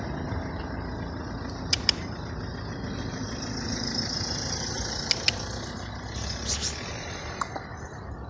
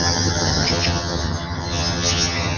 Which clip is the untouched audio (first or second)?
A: first